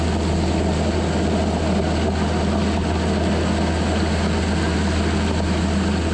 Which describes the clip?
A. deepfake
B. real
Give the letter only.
B